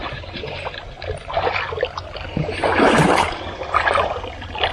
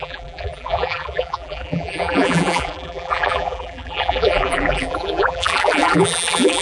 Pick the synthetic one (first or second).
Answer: second